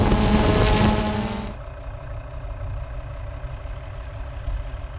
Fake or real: real